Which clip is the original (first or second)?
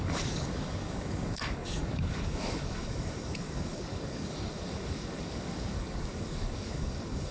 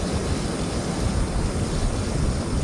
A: second